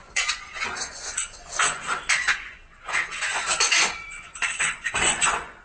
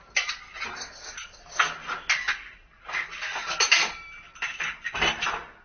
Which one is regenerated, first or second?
first